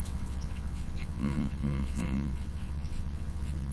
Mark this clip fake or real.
fake